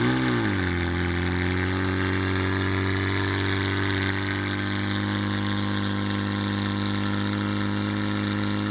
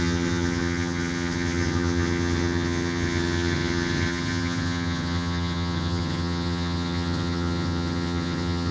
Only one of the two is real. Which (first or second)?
first